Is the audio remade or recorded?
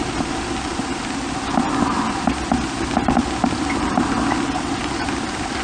recorded